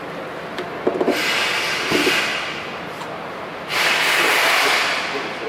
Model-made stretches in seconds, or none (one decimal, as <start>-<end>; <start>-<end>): 3.5-5.5

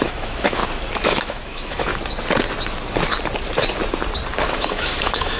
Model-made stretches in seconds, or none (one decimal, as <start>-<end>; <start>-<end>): 0.0-0.6; 1.1-1.9; 4.3-5.4